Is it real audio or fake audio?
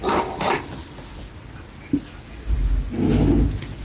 real